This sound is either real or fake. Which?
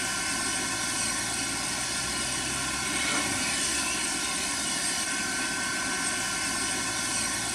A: real